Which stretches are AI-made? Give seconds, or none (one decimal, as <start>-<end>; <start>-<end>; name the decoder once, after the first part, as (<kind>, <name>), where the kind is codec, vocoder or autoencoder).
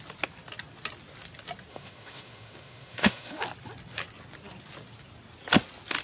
1.7-3.4 (autoencoder, DAC-VAE)